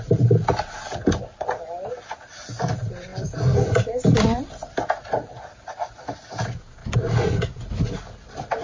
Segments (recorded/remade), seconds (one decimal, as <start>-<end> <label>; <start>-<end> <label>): 0.0-8.6 recorded